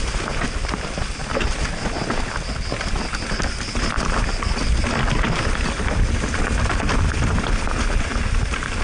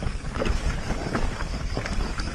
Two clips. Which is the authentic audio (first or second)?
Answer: first